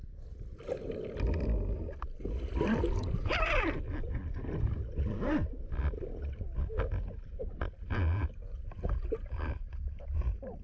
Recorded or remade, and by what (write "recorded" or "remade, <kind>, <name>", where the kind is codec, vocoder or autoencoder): recorded